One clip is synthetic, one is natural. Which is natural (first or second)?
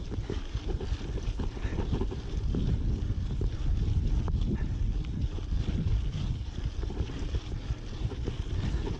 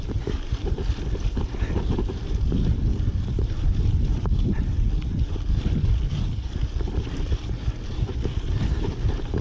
first